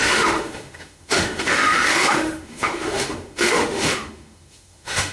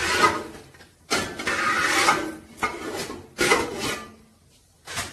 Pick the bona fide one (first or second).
second